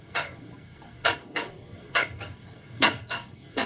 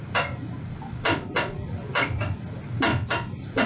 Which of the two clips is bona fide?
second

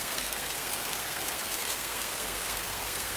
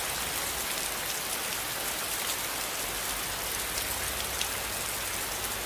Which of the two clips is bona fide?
second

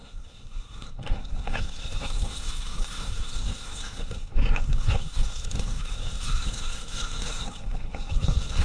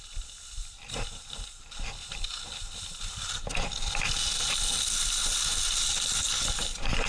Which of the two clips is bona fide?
second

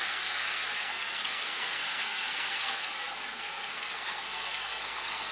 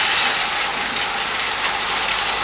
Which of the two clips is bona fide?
second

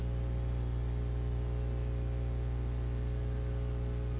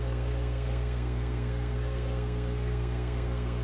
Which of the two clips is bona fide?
first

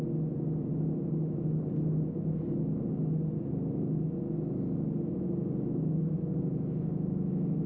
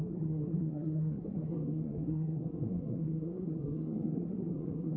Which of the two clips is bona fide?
first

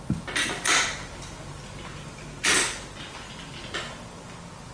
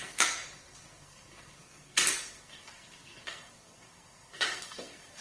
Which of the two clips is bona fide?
first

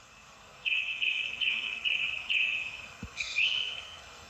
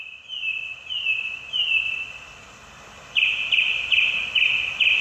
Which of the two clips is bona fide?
second